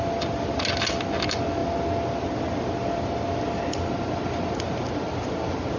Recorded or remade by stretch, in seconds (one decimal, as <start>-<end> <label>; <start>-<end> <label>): 0.0-5.8 recorded